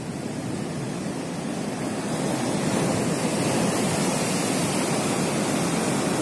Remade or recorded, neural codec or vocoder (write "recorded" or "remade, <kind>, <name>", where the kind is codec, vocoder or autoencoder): recorded